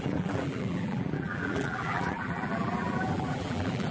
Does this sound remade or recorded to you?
remade